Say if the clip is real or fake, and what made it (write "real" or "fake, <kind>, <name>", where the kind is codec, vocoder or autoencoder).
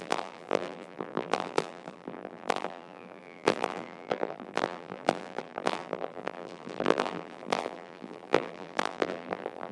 fake, vocoder, BigVGAN v2